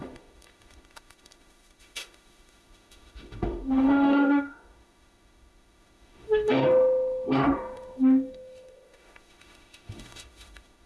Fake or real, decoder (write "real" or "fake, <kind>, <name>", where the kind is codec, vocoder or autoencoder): fake, autoencoder, DAC-VAE